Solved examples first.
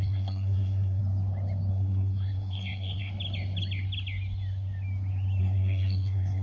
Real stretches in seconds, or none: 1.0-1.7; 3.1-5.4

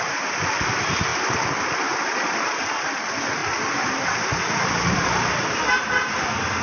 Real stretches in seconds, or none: 0.0-6.6

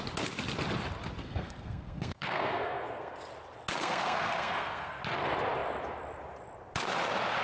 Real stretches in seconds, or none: 0.0-1.2; 3.1-3.8; 5.0-7.4

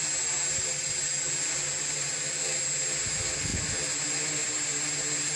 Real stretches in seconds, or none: 0.0-5.4

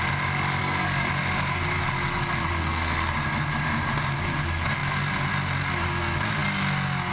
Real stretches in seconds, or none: 0.0-0.6; 1.1-2.6; 3.1-7.1

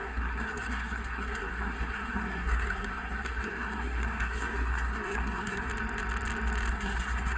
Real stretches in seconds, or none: 5.7-6.7

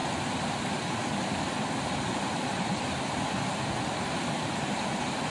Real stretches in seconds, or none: 0.0-5.3